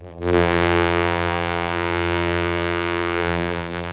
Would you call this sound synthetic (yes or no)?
yes